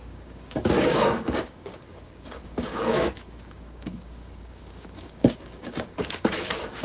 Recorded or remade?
remade